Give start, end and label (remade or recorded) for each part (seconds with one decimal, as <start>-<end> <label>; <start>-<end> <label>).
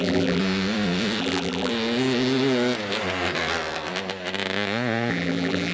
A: 0.0-0.4 remade; 0.4-1.2 recorded; 1.2-1.7 remade; 1.7-5.1 recorded; 5.1-5.7 remade